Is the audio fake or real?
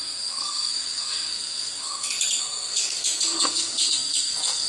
fake